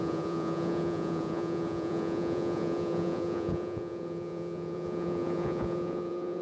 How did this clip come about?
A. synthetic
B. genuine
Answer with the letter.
A